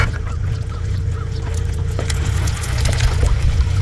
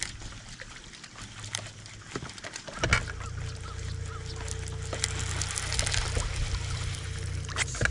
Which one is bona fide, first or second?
second